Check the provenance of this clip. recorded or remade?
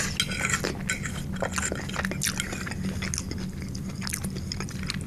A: recorded